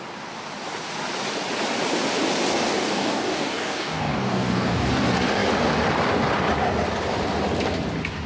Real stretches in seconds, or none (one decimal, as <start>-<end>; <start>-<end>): 0.0-2.5; 4.9-8.3